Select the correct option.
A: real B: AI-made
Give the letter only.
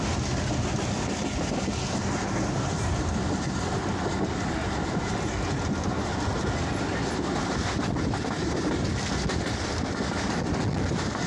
A